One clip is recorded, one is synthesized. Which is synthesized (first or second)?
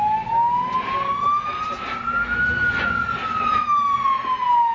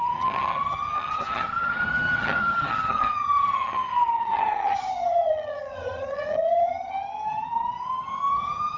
second